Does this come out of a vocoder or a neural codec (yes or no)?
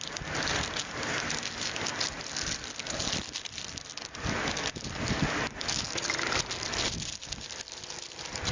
no